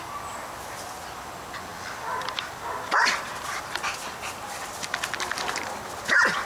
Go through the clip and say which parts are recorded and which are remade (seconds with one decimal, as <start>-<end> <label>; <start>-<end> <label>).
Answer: 0.0-1.7 recorded; 1.7-5.6 remade; 5.6-6.5 recorded